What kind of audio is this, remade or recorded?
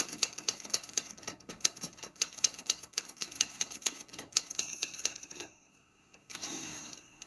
remade